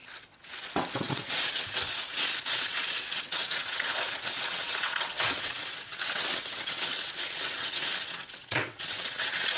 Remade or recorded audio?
remade